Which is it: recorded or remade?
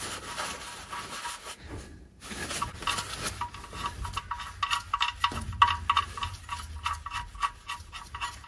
recorded